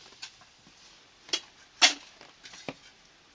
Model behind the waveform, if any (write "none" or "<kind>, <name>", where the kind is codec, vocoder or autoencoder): none